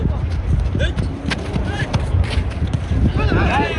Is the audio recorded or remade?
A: recorded